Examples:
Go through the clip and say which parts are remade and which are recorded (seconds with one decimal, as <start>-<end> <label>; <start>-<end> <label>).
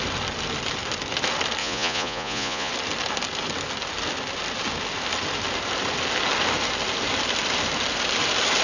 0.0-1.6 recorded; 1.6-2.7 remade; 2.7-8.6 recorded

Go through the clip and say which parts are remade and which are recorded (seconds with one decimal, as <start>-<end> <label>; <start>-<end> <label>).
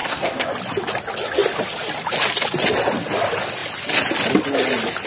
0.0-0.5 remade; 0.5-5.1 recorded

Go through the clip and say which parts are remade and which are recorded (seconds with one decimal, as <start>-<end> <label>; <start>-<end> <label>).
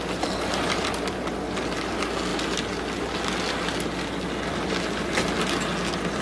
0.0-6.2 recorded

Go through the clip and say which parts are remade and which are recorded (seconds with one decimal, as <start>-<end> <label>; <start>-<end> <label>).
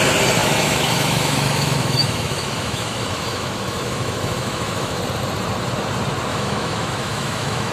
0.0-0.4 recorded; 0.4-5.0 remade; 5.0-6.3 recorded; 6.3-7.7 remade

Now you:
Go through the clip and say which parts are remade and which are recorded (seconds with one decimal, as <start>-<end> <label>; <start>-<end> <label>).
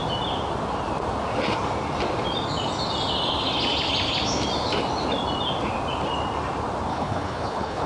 0.0-6.9 recorded; 6.9-7.9 remade